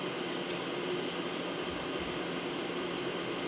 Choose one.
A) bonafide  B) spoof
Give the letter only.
A